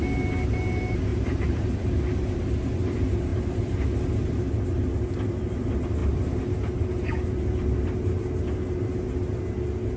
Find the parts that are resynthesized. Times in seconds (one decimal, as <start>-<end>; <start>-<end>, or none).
1.1-2.0